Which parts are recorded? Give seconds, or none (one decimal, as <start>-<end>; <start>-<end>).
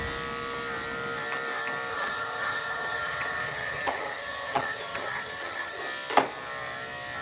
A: 0.0-1.9; 5.8-7.2